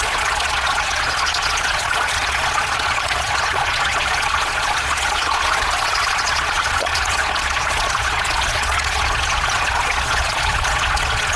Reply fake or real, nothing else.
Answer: fake